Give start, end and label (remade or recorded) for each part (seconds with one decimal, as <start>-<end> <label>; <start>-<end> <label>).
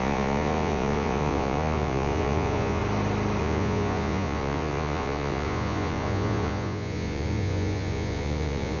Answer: 0.0-2.8 remade; 2.8-3.4 recorded; 3.4-8.8 remade